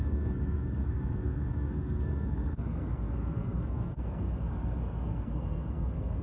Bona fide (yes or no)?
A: no